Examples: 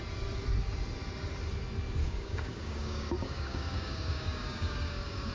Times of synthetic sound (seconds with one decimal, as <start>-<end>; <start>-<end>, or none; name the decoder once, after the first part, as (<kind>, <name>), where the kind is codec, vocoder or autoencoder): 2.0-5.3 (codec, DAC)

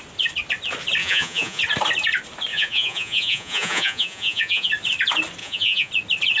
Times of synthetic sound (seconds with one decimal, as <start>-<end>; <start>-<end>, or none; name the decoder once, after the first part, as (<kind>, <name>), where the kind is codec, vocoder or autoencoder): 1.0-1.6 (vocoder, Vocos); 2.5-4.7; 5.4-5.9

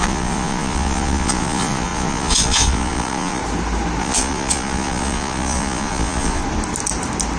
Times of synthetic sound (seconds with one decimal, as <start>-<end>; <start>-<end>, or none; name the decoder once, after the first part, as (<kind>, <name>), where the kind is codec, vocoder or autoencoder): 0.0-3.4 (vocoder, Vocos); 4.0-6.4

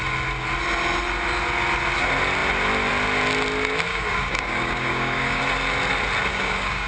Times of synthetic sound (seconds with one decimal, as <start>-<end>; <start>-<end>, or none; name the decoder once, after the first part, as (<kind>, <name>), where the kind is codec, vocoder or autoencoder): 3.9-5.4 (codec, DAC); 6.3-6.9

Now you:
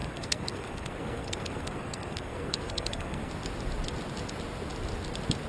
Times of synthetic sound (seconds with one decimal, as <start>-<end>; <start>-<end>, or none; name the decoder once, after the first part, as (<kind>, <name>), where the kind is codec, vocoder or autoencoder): 0.0-3.3 (codec, SNAC)

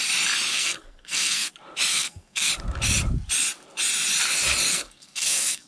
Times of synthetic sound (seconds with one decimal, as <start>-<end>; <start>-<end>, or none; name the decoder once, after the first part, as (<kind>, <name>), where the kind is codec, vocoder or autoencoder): 0.5-1.5 (codec, SNAC); 1.9-2.5; 4.7-5.7

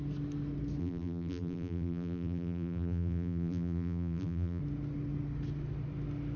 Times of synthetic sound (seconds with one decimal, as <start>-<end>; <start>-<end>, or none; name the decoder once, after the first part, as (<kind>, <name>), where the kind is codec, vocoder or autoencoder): 0.8-4.6 (vocoder, BigVGAN v2)